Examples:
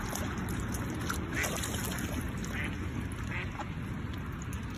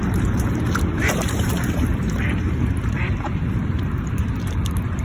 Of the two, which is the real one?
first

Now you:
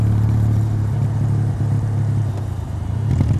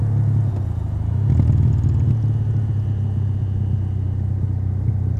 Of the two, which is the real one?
second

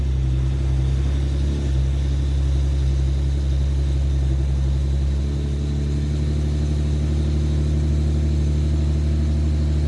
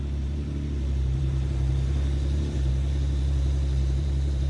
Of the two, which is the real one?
first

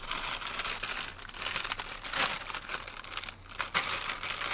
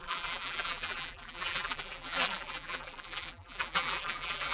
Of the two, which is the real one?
first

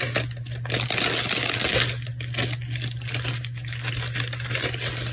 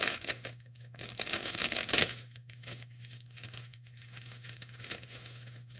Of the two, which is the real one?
first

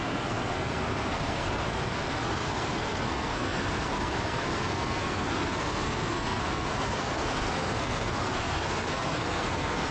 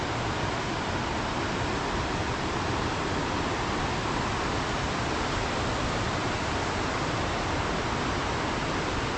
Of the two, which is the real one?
second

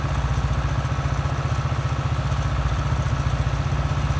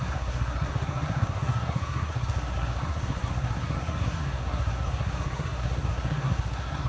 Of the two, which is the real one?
first